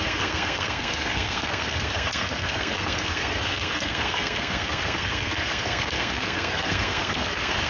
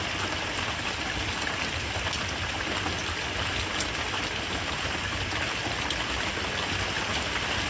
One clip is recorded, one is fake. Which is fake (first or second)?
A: first